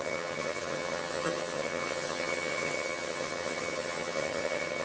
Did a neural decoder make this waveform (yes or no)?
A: yes